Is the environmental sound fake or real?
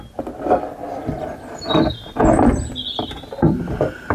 real